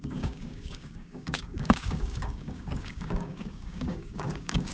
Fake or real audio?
fake